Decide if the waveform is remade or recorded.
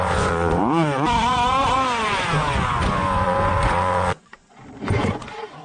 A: remade